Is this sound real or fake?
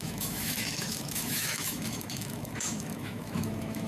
fake